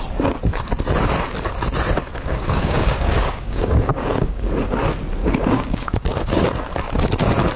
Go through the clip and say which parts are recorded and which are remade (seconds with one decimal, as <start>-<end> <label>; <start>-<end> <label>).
0.0-2.1 recorded; 2.1-4.5 remade; 4.5-5.2 recorded; 5.2-6.4 remade; 6.4-7.6 recorded